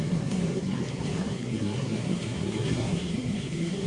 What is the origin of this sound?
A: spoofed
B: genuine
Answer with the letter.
A